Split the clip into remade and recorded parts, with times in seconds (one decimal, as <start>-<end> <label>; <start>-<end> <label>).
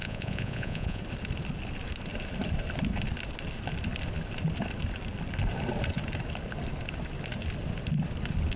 0.0-1.0 remade; 1.0-8.6 recorded